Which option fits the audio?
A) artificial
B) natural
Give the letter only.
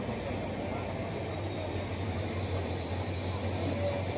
B